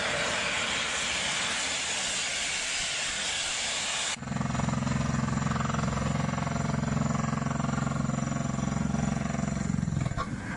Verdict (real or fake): real